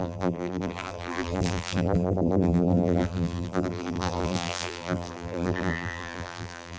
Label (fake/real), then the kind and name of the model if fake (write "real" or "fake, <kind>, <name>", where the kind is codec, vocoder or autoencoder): fake, vocoder, BigVGAN v2